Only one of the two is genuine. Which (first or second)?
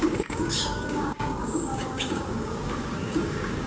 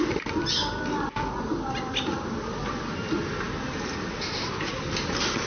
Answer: second